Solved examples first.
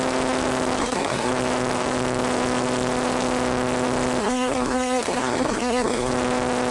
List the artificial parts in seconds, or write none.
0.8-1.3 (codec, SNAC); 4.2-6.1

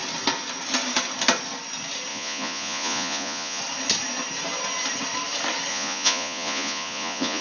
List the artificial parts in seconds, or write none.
2.1-3.6 (vocoder, Vocos); 5.7-7.4

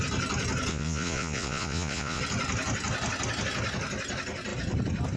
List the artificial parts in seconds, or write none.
0.7-2.2 (vocoder, Vocos)